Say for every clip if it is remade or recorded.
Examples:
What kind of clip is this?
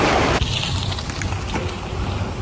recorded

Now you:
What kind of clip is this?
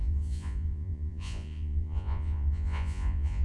remade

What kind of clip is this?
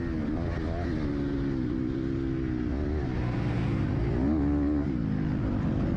recorded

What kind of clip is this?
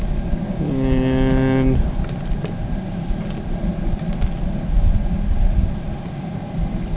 recorded